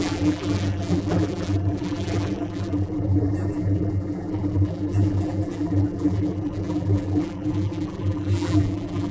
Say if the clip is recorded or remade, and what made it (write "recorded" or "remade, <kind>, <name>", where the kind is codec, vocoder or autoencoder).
remade, vocoder, BigVGAN v2